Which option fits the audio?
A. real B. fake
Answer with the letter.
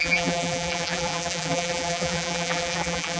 B